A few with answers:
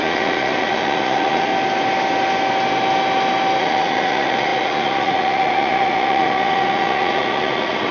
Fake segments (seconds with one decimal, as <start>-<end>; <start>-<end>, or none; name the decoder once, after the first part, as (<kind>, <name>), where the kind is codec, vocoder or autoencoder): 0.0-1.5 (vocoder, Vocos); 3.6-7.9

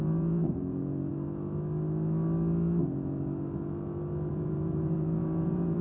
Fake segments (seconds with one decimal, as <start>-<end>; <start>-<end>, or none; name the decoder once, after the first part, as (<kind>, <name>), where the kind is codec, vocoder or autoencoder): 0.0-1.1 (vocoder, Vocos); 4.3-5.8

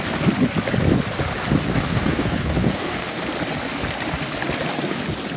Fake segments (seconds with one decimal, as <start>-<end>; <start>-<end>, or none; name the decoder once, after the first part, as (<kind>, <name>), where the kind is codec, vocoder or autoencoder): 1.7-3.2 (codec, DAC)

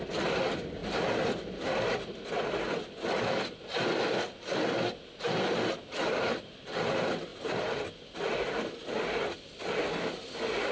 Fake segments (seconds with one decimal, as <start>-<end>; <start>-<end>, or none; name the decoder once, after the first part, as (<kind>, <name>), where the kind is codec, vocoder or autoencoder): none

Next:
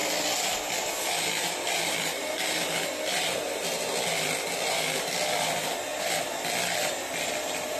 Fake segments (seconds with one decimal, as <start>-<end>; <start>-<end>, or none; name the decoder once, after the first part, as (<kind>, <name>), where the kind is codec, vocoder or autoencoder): none